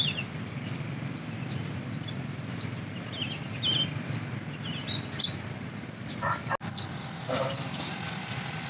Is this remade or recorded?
recorded